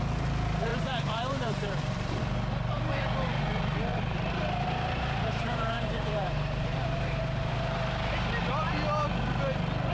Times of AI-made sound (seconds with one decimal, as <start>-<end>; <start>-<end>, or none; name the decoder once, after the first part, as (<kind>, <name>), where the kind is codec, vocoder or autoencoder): 0.7-2.2 (vocoder, BigVGAN v2); 3.9-8.1